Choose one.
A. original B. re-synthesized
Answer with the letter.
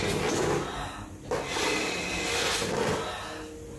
A